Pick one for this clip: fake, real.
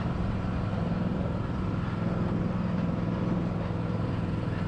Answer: fake